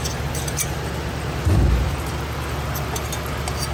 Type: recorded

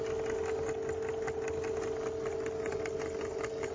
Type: recorded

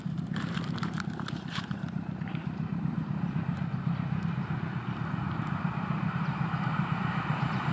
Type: remade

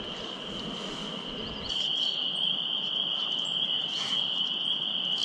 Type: recorded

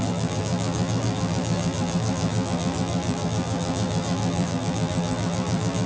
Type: remade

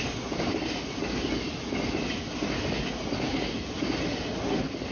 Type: recorded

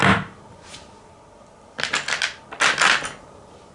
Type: recorded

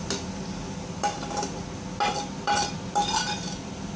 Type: recorded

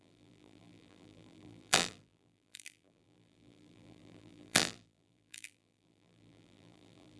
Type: remade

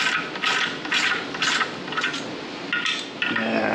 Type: recorded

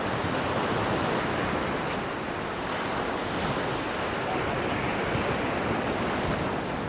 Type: recorded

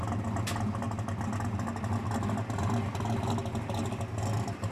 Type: recorded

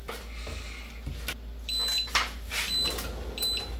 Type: recorded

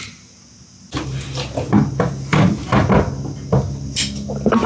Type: recorded